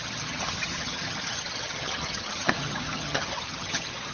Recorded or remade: remade